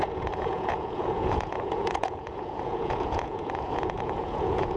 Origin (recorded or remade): remade